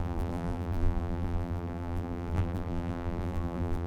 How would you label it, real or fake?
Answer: fake